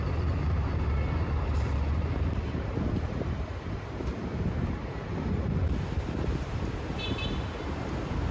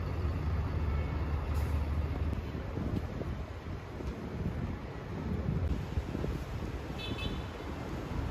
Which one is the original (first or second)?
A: second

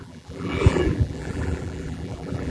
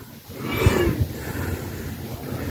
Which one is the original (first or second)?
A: second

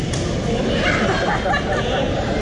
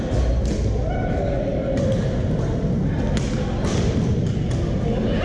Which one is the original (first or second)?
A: second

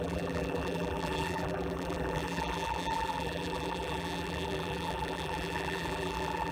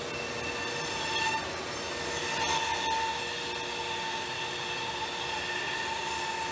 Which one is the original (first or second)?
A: second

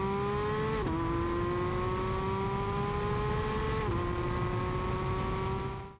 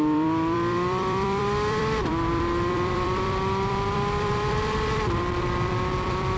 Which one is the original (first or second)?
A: first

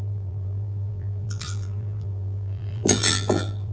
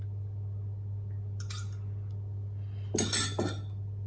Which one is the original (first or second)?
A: second